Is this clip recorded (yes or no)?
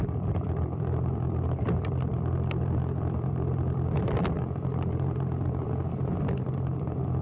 no